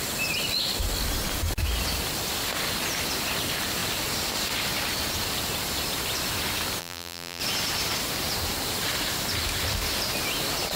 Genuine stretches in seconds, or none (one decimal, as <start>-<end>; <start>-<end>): 0.0-6.8; 7.4-10.8